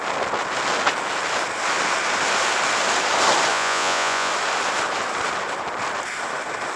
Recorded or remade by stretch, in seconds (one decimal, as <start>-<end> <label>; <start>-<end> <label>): 0.0-3.5 recorded; 3.5-4.3 remade; 4.3-6.8 recorded